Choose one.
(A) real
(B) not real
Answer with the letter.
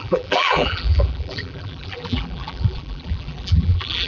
B